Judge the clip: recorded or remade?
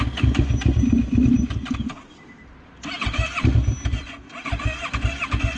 recorded